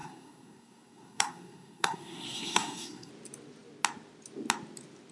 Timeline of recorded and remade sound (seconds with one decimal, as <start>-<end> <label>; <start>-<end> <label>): 0.0-3.1 remade; 3.1-5.1 recorded